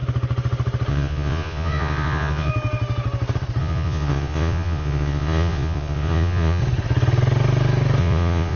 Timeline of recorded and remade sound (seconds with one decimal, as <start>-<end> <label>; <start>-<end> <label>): 0.0-0.9 recorded; 0.9-2.5 remade; 2.5-3.6 recorded; 3.6-6.6 remade; 6.6-8.0 recorded; 8.0-8.6 remade